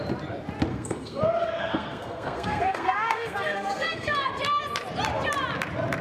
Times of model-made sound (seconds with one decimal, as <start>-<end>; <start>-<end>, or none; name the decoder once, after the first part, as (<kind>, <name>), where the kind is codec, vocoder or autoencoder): 0.7-4.3 (codec, SNAC)